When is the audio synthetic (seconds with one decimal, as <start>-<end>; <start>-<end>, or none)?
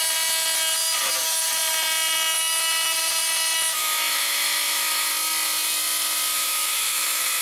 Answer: 3.8-5.1; 6.3-7.4